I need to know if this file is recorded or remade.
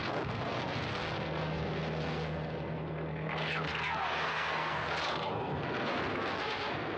remade